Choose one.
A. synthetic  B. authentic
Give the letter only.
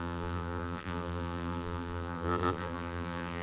A